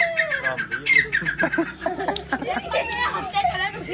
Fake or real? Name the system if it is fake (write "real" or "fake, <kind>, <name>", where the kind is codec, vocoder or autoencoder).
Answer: real